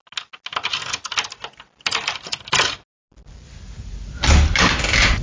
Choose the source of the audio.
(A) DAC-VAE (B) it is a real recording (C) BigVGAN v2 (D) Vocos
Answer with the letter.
B